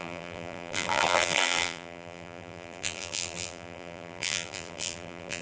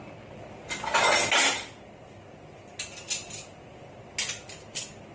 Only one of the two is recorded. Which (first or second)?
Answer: second